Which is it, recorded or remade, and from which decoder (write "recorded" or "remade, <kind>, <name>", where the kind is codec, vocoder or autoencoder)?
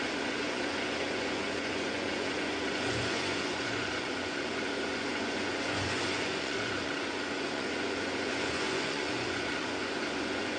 remade, vocoder, Vocos